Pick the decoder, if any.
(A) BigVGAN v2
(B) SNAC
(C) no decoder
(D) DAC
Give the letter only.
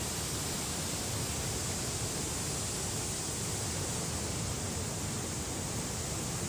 C